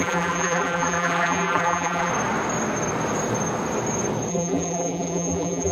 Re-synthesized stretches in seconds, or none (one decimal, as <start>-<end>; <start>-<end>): 0.0-2.1; 4.3-5.7